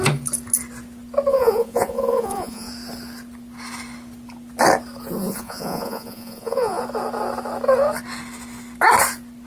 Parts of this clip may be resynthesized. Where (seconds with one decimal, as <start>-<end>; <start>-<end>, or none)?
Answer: 1.3-2.7; 5.2-6.8